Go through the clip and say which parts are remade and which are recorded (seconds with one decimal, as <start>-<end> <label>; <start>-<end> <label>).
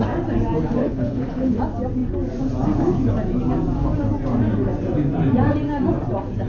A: 0.0-0.8 recorded; 0.8-1.6 remade; 1.6-6.5 recorded